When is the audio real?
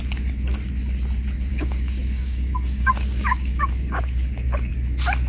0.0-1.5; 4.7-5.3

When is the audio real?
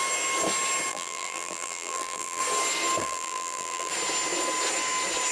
0.0-0.9; 2.4-3.0; 3.9-5.3